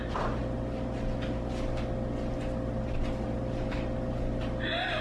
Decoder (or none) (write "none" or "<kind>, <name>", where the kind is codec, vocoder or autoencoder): none